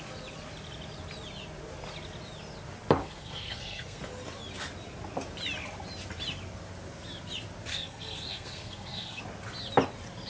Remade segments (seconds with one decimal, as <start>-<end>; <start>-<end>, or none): 3.0-4.0; 7.7-9.2